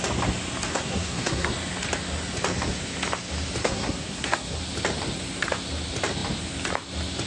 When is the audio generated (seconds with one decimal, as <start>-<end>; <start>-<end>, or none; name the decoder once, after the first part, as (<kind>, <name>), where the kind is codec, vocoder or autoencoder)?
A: 0.7-1.5 (codec, SNAC); 3.6-4.6